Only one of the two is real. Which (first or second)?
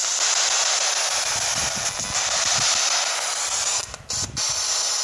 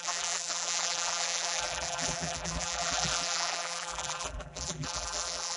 first